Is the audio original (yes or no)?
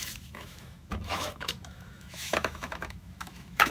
no